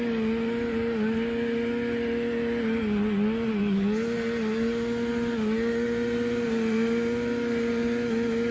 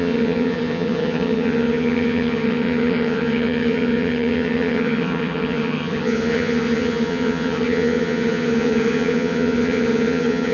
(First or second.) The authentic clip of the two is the first